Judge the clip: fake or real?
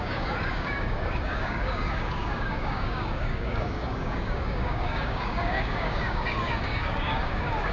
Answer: fake